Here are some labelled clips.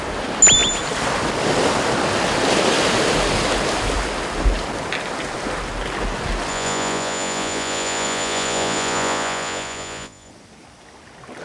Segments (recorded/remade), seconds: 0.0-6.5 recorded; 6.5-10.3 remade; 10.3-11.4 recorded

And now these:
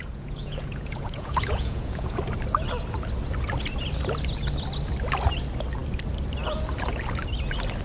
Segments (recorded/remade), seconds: 0.0-2.2 remade; 2.2-7.8 recorded

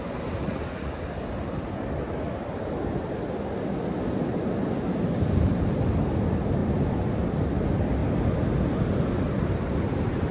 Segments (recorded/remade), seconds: 0.0-0.4 recorded; 0.4-0.9 remade; 0.9-10.3 recorded

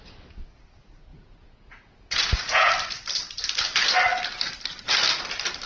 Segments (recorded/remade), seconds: 0.0-1.1 recorded; 1.1-2.7 remade; 2.7-5.7 recorded